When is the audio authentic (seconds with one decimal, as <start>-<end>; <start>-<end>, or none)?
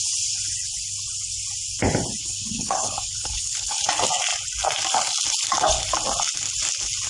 0.0-2.2; 3.8-7.1